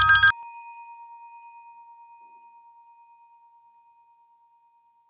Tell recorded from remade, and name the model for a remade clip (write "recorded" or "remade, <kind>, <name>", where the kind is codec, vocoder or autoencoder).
recorded